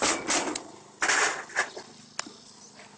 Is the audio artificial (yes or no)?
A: no